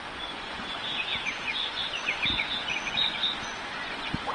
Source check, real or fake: fake